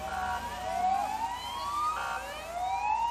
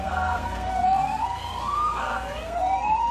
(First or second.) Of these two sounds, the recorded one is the first